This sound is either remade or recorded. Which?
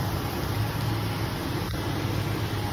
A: recorded